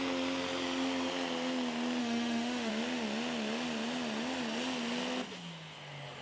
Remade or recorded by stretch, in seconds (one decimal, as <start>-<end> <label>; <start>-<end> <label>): 0.0-2.0 recorded; 2.0-2.7 remade; 2.7-6.2 recorded